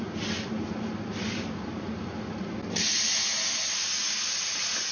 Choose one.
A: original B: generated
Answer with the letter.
A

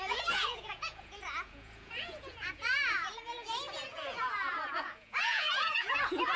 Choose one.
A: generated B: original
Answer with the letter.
A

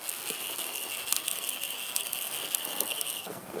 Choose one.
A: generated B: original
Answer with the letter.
A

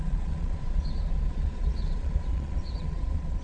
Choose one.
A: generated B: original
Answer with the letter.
A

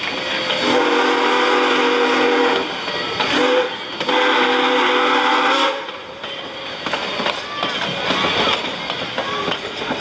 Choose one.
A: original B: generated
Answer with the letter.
A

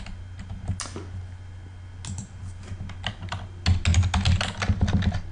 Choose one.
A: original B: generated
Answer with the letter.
A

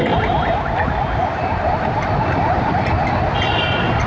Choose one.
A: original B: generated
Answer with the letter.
A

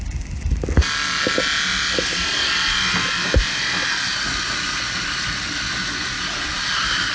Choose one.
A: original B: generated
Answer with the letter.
A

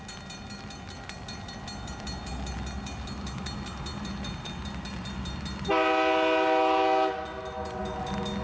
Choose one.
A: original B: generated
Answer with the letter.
A